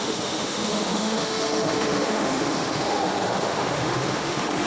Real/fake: fake